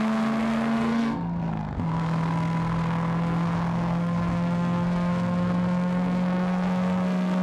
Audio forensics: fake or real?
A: fake